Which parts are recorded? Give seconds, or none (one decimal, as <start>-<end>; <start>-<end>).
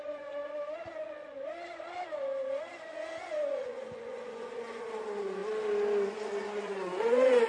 0.4-1.0; 1.5-3.5; 5.4-6.1